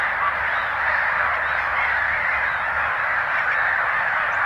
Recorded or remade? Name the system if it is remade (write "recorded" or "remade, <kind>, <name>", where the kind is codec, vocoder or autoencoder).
recorded